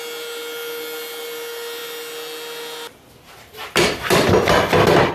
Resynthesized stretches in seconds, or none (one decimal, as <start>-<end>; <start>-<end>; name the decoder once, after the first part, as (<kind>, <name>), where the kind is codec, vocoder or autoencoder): none